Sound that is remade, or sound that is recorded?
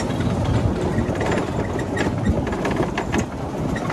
recorded